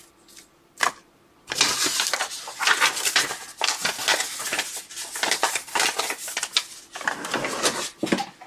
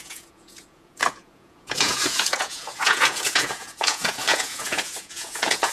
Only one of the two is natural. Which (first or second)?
first